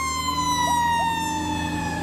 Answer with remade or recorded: recorded